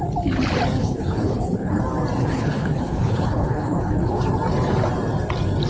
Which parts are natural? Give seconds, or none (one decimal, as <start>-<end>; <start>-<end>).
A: 0.0-0.8; 1.8-2.2; 4.2-5.7